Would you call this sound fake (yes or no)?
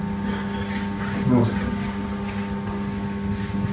no